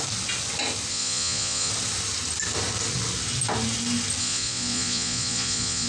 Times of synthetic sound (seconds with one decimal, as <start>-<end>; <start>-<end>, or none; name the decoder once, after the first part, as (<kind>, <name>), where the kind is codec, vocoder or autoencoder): 0.9-1.7 (vocoder, Vocos); 4.2-5.9